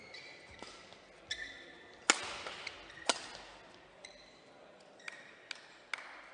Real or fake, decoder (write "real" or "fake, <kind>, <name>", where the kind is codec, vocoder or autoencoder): real